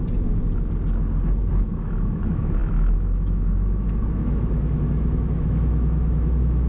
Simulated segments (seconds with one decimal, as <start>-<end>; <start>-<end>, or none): 1.5-6.7

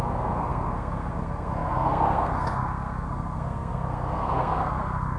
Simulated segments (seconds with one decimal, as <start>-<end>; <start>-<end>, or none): 0.0-5.2

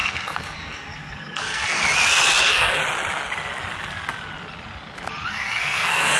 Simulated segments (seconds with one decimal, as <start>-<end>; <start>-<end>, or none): 0.0-1.8; 2.4-2.8; 5.3-6.2

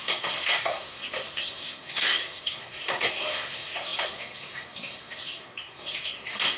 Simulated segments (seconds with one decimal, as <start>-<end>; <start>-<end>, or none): 0.0-6.6

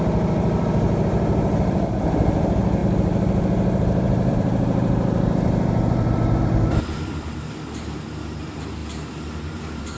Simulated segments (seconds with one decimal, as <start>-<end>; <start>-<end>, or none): 0.0-8.8; 9.6-10.0

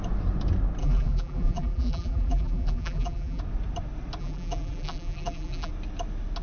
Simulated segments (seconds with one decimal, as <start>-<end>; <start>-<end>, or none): 0.8-3.4; 4.2-5.7

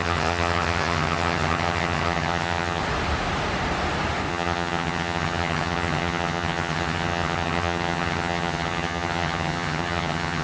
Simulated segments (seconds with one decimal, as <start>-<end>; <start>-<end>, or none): 0.0-2.8; 4.3-10.4

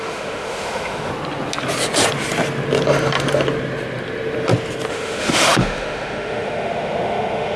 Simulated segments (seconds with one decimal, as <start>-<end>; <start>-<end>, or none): 0.0-1.1; 4.9-7.6